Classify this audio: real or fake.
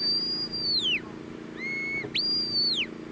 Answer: real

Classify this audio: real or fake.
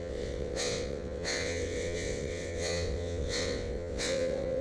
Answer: fake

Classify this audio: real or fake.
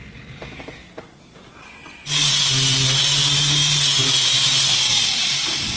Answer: real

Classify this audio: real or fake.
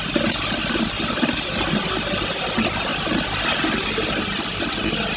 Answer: real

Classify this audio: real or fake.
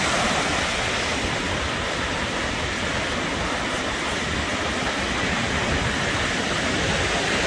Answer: real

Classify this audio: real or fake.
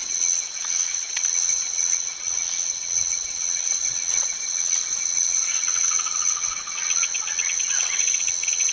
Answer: fake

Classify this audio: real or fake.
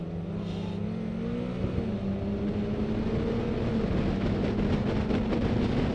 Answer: real